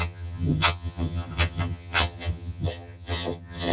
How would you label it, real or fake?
fake